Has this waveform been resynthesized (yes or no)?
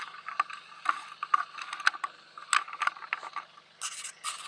no